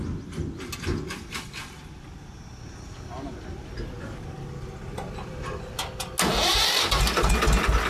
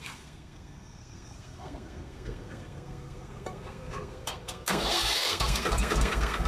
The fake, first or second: second